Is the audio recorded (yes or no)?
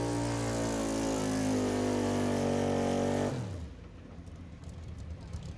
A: yes